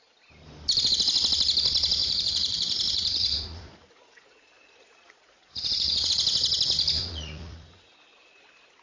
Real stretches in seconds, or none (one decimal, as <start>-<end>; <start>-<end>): 0.0-2.0; 6.1-7.0; 7.9-8.8

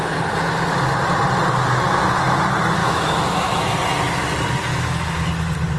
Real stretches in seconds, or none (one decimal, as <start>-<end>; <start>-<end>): 0.0-2.8; 3.7-4.7; 5.3-5.8